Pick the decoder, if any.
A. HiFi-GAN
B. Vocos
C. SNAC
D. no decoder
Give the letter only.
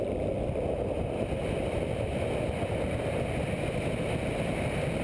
D